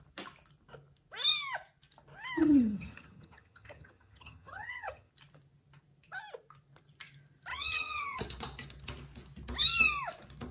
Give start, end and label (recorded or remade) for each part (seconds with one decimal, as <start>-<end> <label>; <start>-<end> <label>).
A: 0.0-2.4 recorded; 2.4-5.1 remade; 5.1-7.5 recorded; 7.5-8.2 remade; 8.2-10.5 recorded